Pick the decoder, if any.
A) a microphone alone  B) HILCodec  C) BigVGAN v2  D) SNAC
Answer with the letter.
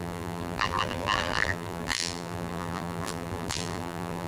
C